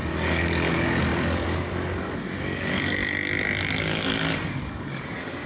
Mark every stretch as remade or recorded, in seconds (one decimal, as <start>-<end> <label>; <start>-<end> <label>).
0.0-3.0 remade; 3.0-3.8 recorded; 3.8-5.5 remade